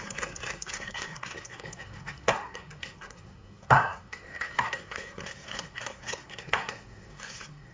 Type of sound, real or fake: fake